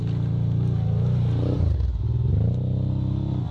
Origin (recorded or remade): recorded